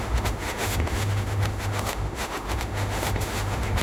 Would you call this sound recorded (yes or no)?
no